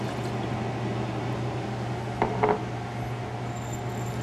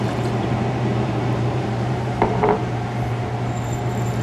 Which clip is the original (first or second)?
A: first